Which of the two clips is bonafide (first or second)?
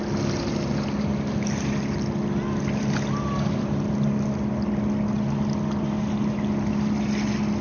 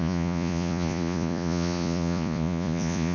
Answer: first